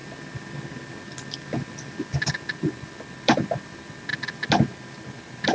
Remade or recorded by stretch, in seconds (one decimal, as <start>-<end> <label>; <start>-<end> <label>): 0.0-2.3 recorded; 2.3-4.1 remade; 4.1-5.0 recorded; 5.0-5.5 remade